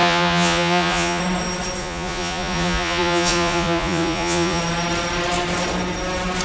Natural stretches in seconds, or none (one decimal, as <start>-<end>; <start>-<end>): 1.2-1.8; 4.6-6.4